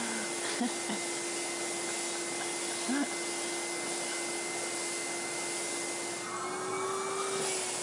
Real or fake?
real